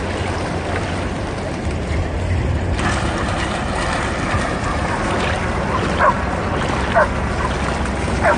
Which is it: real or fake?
real